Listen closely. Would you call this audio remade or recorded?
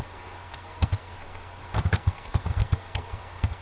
remade